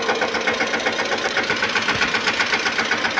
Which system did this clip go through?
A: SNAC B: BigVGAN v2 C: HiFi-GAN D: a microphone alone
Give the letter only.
D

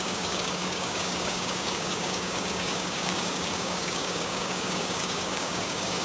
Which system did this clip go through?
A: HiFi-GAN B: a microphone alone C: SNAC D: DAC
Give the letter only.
D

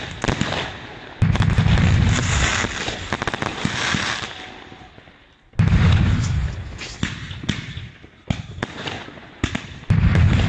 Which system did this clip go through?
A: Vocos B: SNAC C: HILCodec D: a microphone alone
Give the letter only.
D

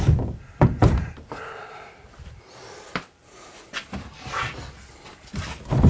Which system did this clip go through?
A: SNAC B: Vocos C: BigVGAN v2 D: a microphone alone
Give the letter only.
C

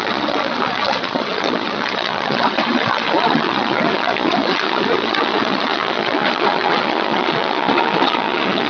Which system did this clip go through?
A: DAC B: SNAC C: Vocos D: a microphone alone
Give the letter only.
C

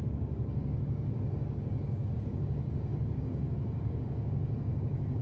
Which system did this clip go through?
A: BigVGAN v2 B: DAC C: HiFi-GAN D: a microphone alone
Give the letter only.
B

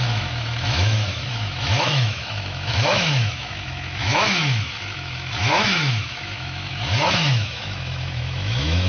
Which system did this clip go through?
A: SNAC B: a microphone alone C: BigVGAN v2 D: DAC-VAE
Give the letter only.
D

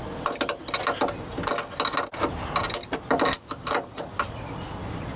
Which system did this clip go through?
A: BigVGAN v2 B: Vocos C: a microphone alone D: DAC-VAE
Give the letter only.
C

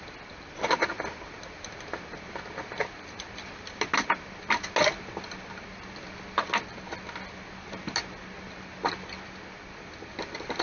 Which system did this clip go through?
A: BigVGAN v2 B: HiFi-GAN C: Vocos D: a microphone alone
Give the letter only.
D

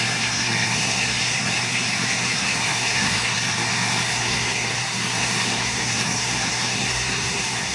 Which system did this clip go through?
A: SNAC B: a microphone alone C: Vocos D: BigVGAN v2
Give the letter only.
A